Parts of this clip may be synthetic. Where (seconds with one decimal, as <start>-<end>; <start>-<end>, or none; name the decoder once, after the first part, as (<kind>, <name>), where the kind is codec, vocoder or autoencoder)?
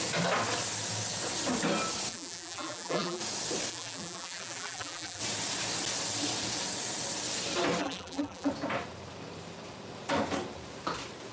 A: 2.1-3.2 (vocoder, BigVGAN v2); 3.7-5.2; 7.8-8.5